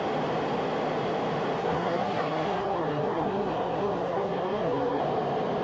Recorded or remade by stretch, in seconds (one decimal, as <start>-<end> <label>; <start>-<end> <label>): 0.0-1.6 recorded; 1.6-5.0 remade; 5.0-5.6 recorded